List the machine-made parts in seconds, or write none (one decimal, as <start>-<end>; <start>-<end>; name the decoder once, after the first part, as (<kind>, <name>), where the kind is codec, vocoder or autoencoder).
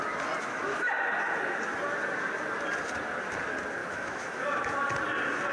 0.4-0.9 (autoencoder, DAC-VAE); 3.8-4.6